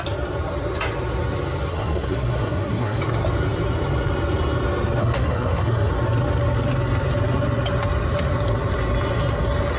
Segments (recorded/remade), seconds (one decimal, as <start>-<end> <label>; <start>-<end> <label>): 0.0-1.7 recorded; 1.7-3.0 remade; 3.0-5.0 recorded; 5.0-5.9 remade; 5.9-9.8 recorded